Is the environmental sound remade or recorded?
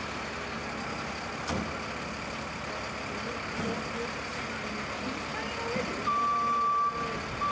recorded